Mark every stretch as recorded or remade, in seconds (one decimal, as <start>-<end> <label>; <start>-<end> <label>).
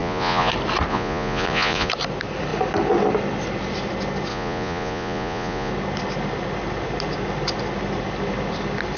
0.0-0.5 remade; 0.5-0.9 recorded; 0.9-1.9 remade; 1.9-4.3 recorded; 4.3-5.7 remade; 5.7-9.0 recorded